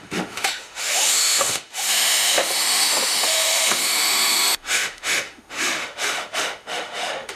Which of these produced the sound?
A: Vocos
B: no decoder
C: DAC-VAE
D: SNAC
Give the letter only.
C